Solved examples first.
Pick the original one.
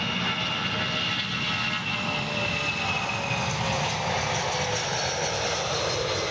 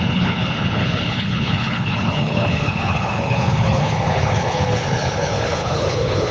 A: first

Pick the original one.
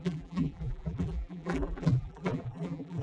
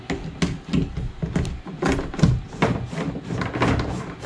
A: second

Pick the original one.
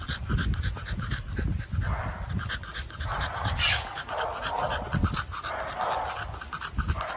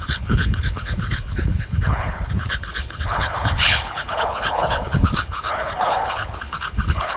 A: first